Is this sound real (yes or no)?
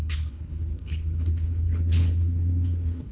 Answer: no